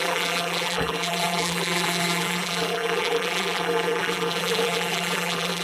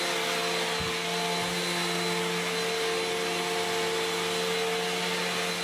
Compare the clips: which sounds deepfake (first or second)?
first